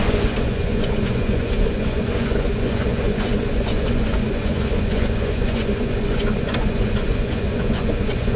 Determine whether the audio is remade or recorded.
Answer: remade